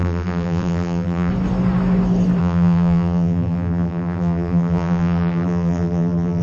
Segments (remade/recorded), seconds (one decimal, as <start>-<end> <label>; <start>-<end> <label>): 0.0-1.3 remade; 1.3-2.4 recorded; 2.4-6.4 remade